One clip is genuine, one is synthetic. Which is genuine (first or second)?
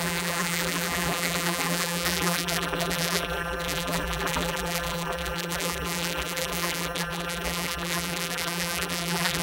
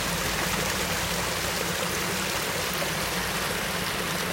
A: second